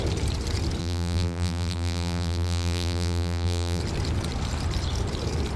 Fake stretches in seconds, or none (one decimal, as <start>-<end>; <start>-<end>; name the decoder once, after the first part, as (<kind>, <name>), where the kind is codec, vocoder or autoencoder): 0.8-3.8 (vocoder, BigVGAN v2)